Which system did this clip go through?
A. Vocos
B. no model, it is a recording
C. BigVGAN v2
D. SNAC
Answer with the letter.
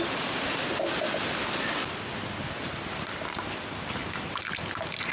B